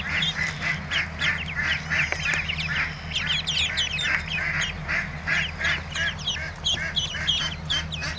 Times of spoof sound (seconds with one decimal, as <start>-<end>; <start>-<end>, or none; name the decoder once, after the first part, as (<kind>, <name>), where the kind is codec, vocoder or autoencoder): none